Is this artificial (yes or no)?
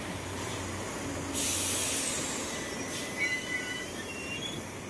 no